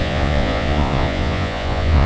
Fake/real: fake